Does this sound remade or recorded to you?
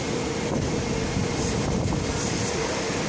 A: recorded